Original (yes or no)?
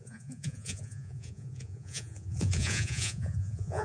no